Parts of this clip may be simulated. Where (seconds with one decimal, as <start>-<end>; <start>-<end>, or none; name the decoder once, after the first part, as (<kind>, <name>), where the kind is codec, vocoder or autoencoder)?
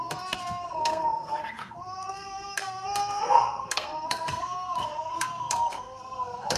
0.0-6.6 (codec, SNAC)